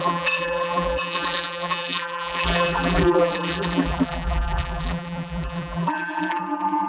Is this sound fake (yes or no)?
yes